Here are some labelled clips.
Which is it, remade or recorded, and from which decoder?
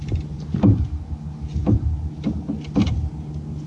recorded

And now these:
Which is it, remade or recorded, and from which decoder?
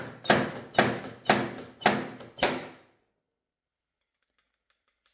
recorded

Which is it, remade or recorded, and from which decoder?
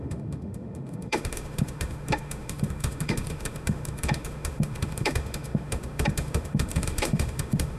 remade, autoencoder, DAC-VAE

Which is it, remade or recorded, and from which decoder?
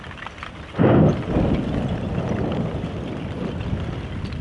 recorded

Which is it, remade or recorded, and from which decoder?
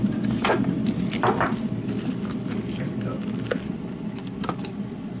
recorded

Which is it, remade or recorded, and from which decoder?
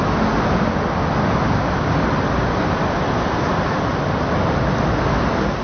recorded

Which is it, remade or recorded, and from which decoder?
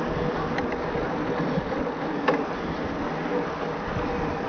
recorded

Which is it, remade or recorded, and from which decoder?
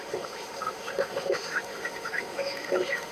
remade, autoencoder, DAC-VAE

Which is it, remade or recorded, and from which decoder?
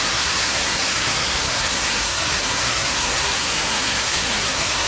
remade, codec, SNAC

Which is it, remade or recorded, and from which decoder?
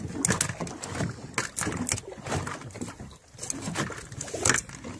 recorded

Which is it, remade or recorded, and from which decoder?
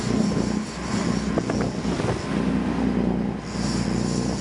recorded